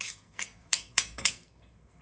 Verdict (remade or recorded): remade